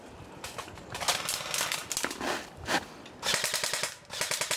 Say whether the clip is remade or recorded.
recorded